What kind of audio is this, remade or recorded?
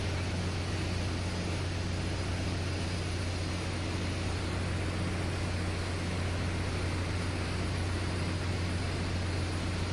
recorded